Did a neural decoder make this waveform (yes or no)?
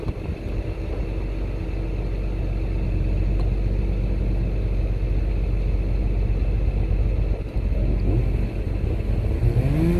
no